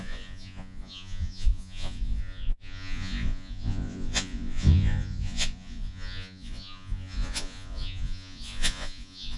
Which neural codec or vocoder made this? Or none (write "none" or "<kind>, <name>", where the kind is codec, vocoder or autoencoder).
vocoder, Vocos